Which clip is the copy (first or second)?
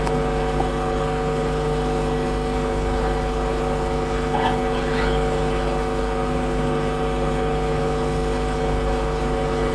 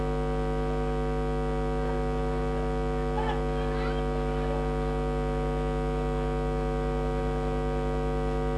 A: first